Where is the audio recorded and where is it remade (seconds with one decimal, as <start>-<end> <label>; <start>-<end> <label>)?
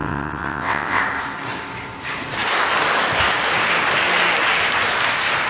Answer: 0.0-1.0 remade; 1.0-5.5 recorded